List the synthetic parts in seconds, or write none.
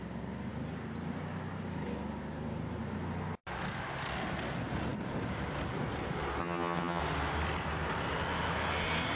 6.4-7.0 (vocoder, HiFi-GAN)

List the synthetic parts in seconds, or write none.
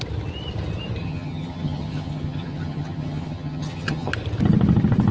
1.0-4.1 (vocoder, HiFi-GAN)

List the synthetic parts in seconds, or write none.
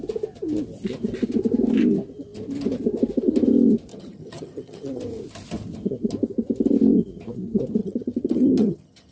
3.9-5.0 (vocoder, HiFi-GAN); 7.8-9.1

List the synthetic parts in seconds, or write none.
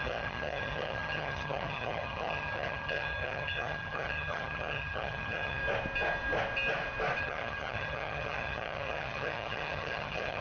0.0-5.6 (vocoder, HiFi-GAN); 7.2-10.4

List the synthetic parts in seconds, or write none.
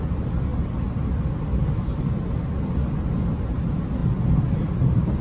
none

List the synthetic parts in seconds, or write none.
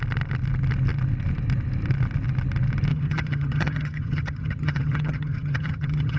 2.9-6.2 (vocoder, HiFi-GAN)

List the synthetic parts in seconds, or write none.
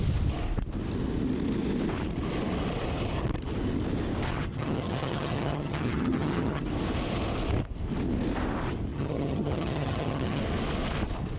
4.5-6.6 (vocoder, HiFi-GAN); 8.9-10.4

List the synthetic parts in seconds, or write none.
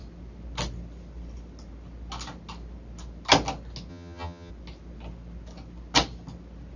3.9-4.5 (vocoder, HiFi-GAN)